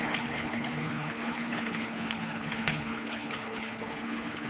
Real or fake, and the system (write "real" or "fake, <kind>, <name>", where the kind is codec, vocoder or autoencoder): fake, codec, HILCodec